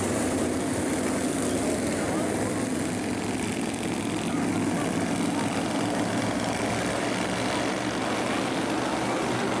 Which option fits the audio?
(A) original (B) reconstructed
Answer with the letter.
A